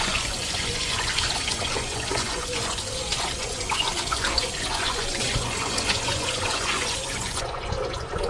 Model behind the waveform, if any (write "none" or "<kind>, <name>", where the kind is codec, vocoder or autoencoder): vocoder, Vocos